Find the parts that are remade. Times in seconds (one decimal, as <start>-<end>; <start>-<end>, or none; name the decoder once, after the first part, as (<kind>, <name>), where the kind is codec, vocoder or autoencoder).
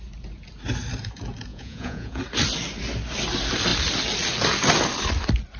1.5-2.2 (vocoder, Vocos)